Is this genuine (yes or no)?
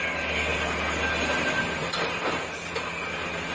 yes